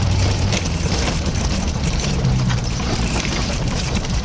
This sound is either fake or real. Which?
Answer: fake